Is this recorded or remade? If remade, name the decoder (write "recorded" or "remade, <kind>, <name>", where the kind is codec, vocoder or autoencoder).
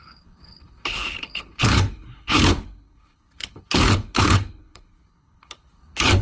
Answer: remade, codec, HILCodec